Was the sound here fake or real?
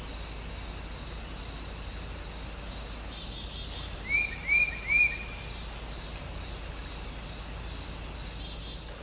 real